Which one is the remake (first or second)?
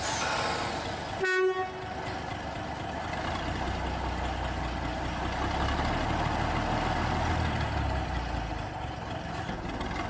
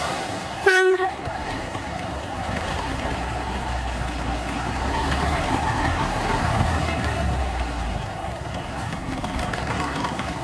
second